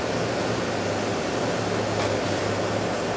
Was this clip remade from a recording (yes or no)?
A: no